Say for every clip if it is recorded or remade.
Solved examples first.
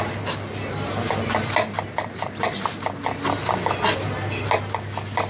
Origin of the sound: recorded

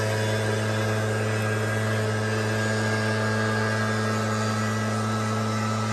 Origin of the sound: recorded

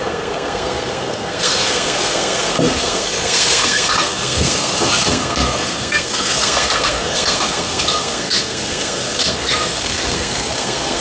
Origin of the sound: remade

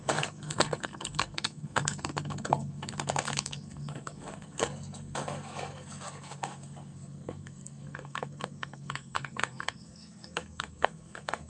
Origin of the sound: remade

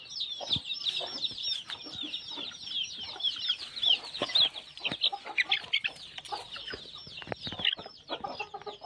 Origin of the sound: recorded